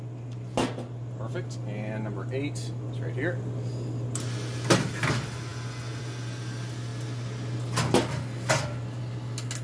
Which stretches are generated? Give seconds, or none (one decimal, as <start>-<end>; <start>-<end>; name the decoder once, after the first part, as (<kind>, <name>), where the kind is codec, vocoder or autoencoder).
none